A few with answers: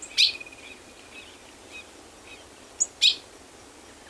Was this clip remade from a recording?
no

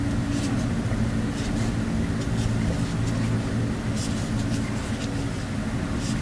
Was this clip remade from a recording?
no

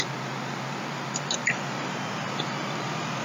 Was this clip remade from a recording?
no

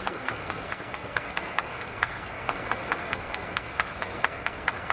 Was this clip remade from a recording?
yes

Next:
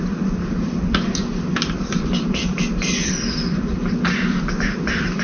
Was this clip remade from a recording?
no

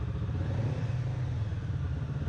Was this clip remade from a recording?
no